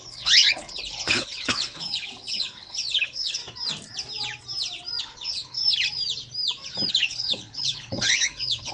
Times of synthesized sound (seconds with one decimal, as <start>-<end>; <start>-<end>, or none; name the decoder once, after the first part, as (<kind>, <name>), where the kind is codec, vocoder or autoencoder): 0.0-3.4 (codec, HILCodec); 5.0-5.6; 6.9-8.7